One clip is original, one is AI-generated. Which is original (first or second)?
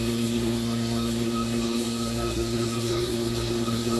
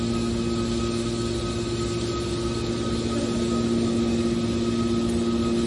second